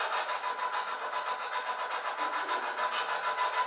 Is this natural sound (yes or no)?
yes